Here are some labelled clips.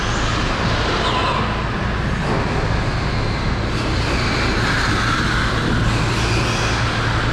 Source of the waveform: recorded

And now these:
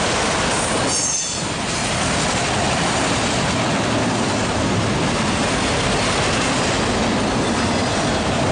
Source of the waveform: recorded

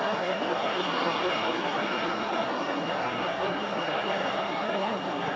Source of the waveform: remade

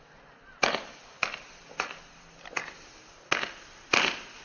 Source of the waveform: recorded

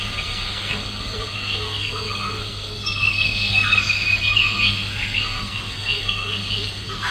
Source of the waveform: remade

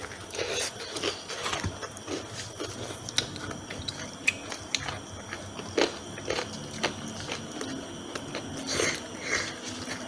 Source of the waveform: recorded